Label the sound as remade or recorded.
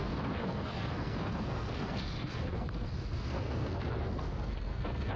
remade